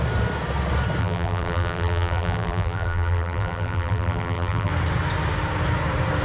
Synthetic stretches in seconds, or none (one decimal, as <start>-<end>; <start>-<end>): 1.0-4.7